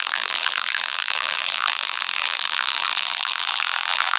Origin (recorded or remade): remade